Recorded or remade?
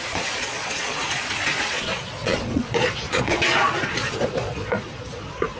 remade